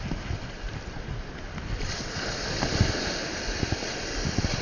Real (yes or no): yes